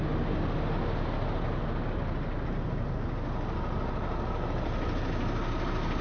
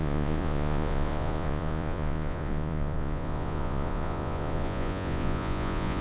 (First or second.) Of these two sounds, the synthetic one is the second